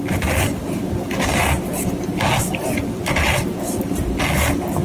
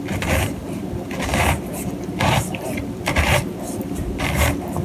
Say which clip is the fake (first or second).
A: second